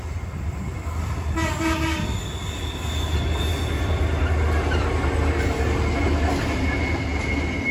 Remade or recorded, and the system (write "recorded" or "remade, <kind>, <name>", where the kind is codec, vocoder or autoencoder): recorded